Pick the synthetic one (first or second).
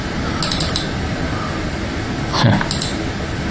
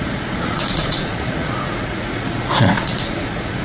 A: second